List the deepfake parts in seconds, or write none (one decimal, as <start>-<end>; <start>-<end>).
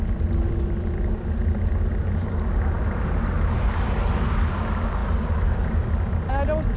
none